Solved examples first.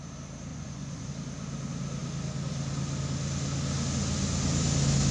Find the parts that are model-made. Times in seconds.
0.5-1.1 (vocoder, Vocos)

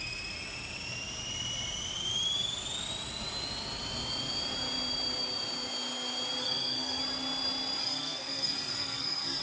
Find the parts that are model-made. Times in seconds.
6.4-7.0 (codec, SNAC); 7.8-9.4

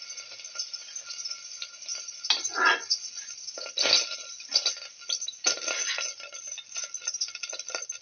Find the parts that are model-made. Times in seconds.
none